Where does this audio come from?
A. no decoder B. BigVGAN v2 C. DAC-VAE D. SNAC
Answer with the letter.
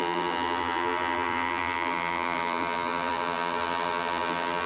B